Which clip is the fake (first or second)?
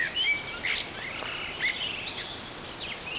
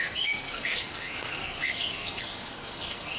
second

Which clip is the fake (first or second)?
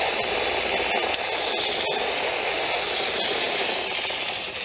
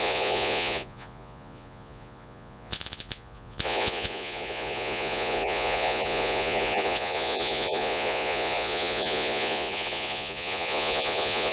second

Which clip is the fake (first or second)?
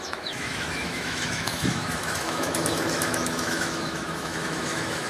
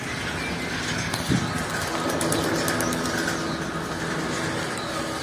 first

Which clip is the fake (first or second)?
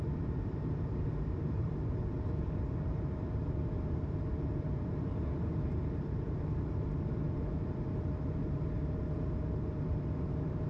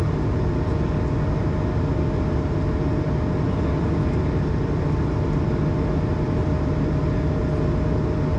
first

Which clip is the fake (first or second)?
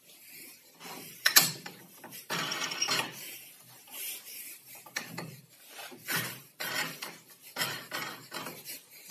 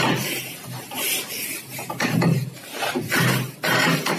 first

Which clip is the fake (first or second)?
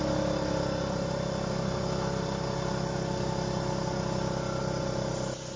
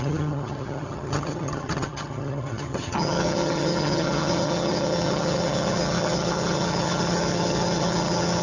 second